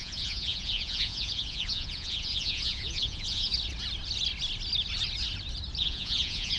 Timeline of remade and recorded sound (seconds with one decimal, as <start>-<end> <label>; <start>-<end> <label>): 0.0-3.5 remade; 3.5-5.8 recorded; 5.8-6.6 remade